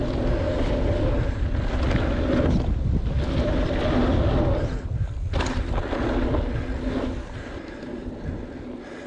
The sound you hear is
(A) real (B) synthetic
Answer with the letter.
A